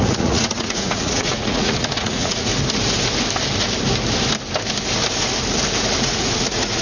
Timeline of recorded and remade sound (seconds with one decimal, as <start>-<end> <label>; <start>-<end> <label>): 0.0-2.5 remade; 2.5-6.0 recorded; 6.0-6.8 remade